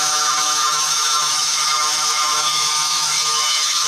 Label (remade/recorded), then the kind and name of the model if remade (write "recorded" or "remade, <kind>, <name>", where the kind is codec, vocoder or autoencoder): remade, autoencoder, DAC-VAE